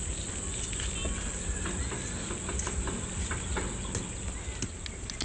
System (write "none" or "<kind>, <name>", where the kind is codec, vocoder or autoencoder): none